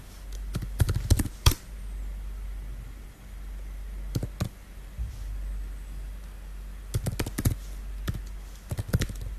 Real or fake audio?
real